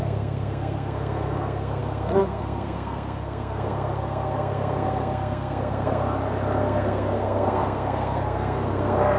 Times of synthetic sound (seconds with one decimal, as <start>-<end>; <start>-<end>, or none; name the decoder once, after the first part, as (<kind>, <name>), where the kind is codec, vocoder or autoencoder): 0.0-6.0 (codec, SNAC); 6.6-9.2